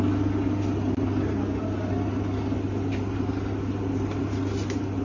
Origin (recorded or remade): recorded